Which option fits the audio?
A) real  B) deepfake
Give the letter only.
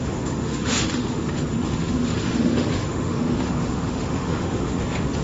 B